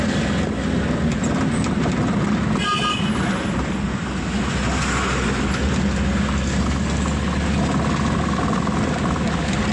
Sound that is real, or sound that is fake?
real